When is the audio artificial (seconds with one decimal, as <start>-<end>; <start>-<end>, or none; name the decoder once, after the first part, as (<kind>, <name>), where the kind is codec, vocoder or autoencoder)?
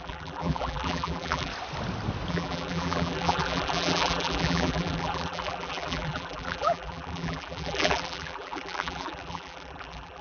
0.0-1.5 (vocoder, BigVGAN v2); 2.3-10.2